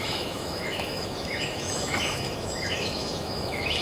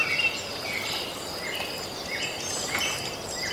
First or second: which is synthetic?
first